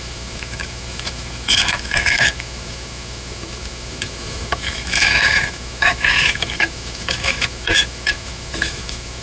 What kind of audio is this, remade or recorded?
remade